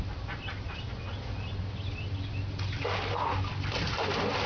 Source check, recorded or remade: recorded